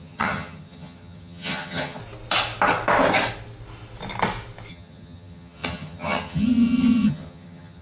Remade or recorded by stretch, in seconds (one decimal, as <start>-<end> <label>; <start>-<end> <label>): 0.0-2.0 remade; 2.0-4.7 recorded; 4.7-7.8 remade

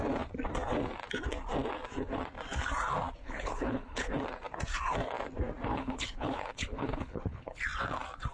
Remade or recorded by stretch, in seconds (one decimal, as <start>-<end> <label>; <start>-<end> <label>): 0.0-3.2 recorded; 3.2-4.1 remade; 4.1-5.7 recorded; 5.7-7.6 remade; 7.6-8.3 recorded

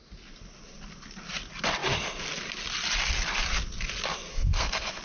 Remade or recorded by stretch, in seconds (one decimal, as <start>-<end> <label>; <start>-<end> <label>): 0.0-4.3 recorded; 4.3-5.0 remade

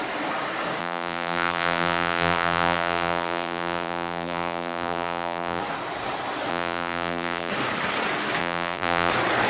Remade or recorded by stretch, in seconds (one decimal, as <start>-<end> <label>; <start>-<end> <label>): 0.0-0.8 recorded; 0.8-5.6 remade; 5.6-6.5 recorded; 6.5-7.5 remade; 7.5-8.4 recorded; 8.4-9.1 remade; 9.1-9.5 recorded

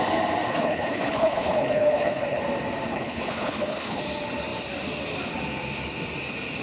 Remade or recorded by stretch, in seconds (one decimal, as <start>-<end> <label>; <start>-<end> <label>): 0.0-0.5 recorded; 0.5-2.4 remade; 2.4-2.9 recorded; 2.9-4.0 remade; 4.0-6.6 recorded

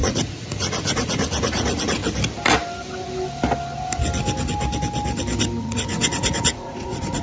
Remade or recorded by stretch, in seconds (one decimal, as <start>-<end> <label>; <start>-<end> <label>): 0.0-2.0 remade; 2.0-5.6 recorded; 5.6-7.2 remade

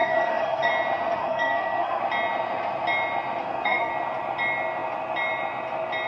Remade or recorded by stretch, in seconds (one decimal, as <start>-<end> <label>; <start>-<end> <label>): 0.0-0.7 remade; 0.7-1.2 recorded; 1.2-2.0 remade; 2.0-3.4 recorded; 3.4-3.9 remade; 3.9-6.1 recorded

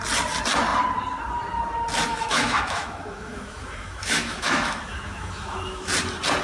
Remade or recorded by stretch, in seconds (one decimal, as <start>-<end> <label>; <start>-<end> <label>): 0.0-2.1 recorded; 2.1-5.9 remade; 5.9-6.4 recorded